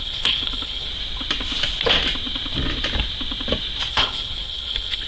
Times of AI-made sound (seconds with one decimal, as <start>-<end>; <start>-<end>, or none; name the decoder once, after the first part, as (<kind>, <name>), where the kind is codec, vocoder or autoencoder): 0.0-0.9 (codec, HILCodec); 3.9-5.1